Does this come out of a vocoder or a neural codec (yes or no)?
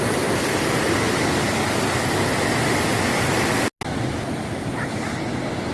no